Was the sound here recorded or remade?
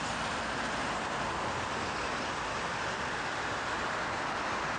recorded